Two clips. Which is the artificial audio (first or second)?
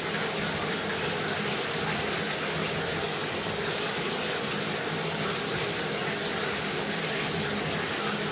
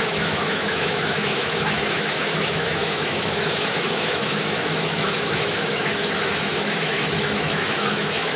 second